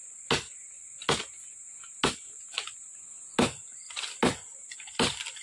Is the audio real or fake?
real